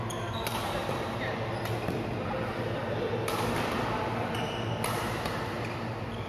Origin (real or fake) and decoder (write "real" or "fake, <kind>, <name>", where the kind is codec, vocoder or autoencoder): real